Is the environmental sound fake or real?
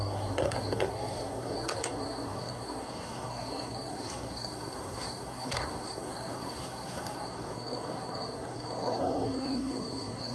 fake